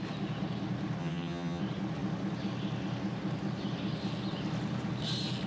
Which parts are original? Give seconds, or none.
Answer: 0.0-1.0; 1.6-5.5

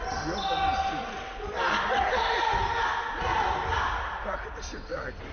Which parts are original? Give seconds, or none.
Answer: 0.0-5.3

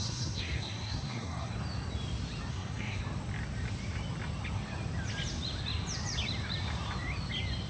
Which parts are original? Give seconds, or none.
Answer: 1.5-2.5; 3.0-7.7

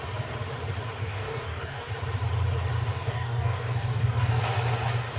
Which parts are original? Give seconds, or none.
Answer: 0.0-1.0; 1.9-2.9; 4.4-5.2

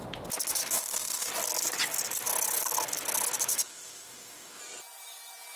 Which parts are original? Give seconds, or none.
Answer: 0.0-0.5; 1.3-3.5; 4.6-5.6

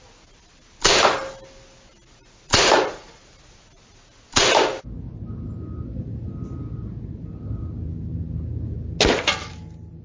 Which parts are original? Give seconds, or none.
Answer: 0.0-10.0

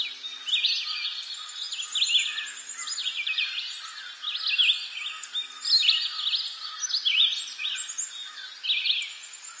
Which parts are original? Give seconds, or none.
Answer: 0.0-3.0; 3.6-9.6